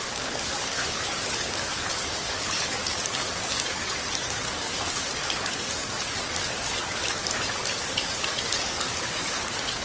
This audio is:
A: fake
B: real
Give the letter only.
A